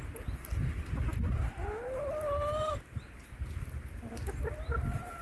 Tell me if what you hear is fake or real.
real